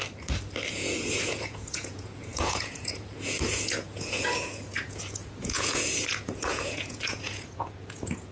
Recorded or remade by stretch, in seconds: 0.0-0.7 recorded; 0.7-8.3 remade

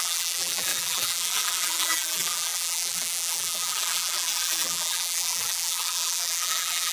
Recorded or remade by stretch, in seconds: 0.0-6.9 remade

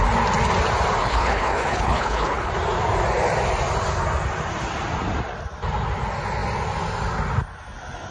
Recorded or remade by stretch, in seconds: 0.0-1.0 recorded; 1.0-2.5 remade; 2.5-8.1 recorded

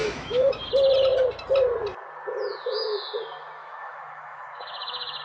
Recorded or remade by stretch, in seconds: 0.0-0.7 remade; 0.7-3.6 recorded; 3.6-5.2 remade

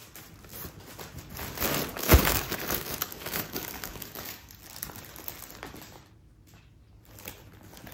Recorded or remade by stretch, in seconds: 0.0-1.9 recorded; 1.9-4.5 remade; 4.5-7.9 recorded

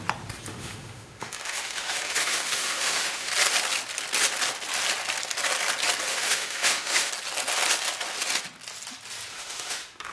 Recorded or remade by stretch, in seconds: 0.0-0.5 recorded; 0.5-3.3 remade; 3.3-6.1 recorded; 6.1-7.1 remade; 7.1-9.3 recorded; 9.3-10.1 remade